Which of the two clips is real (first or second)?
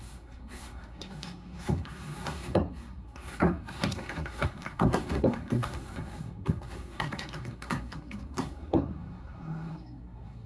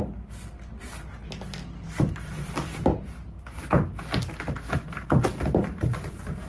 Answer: second